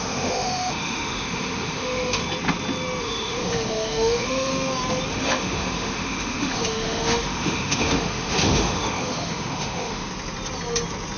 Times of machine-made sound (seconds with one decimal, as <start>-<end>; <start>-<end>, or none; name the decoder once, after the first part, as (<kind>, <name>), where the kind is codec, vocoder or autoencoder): 0.0-2.2 (autoencoder, DAC-VAE); 3.0-4.5; 5.1-10.1

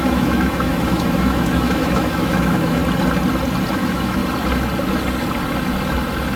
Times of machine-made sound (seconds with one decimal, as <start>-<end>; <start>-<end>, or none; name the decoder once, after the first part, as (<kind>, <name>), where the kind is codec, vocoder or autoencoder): 0.0-2.8 (autoencoder, DAC-VAE); 3.7-4.2

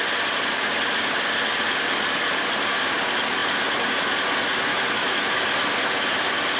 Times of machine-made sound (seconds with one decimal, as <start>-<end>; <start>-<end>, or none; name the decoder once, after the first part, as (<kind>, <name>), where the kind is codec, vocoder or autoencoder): 4.7-5.4 (autoencoder, DAC-VAE)

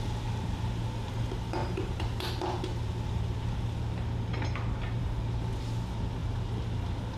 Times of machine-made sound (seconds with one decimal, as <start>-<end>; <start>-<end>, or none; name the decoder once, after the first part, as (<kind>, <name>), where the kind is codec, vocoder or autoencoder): none

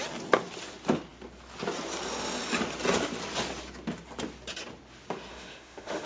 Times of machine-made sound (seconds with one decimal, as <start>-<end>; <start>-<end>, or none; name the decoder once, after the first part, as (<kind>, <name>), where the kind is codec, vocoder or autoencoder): 5.3-6.1 (autoencoder, DAC-VAE)

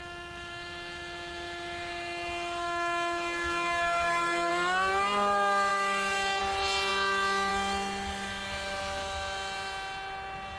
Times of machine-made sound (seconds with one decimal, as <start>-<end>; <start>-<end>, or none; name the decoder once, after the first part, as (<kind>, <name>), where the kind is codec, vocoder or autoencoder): 0.0-4.5 (autoencoder, DAC-VAE); 5.7-6.4

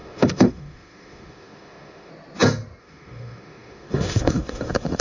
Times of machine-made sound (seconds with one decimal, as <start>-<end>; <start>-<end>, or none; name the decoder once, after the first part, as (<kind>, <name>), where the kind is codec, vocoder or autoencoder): 0.0-2.1 (autoencoder, DAC-VAE); 2.8-5.0

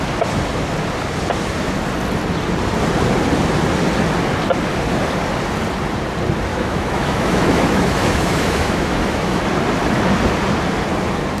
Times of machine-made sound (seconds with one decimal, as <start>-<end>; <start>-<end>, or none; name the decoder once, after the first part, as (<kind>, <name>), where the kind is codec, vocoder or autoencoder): 6.5-9.4 (autoencoder, DAC-VAE)